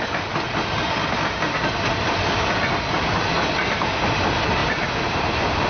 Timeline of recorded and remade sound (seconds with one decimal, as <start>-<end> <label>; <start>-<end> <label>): 0.0-5.7 recorded